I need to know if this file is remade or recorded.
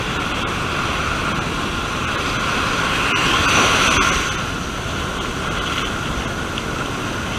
recorded